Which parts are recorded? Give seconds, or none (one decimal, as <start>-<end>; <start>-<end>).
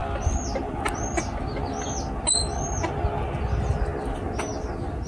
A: 0.8-5.1